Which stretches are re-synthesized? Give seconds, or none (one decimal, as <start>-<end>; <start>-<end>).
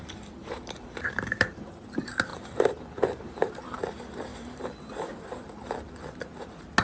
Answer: 0.4-1.8; 2.3-3.8; 4.3-4.9